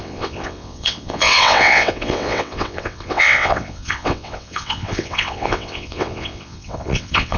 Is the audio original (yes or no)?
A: no